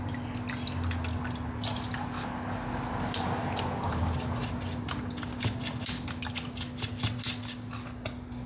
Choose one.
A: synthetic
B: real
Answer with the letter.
B